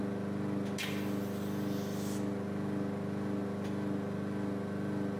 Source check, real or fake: real